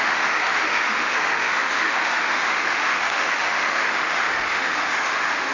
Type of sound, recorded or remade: remade